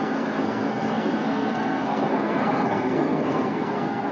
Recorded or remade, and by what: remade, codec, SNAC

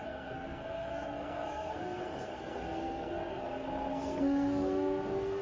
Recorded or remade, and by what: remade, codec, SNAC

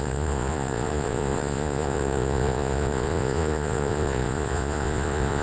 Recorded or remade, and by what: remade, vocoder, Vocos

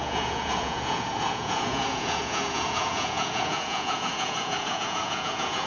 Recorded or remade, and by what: remade, vocoder, Vocos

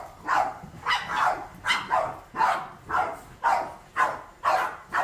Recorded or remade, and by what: recorded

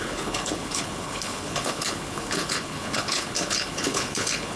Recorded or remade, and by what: remade, codec, HILCodec